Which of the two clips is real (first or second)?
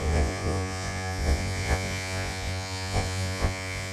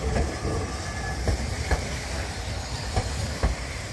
second